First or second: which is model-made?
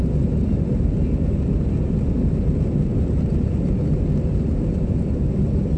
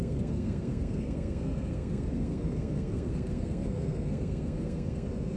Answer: second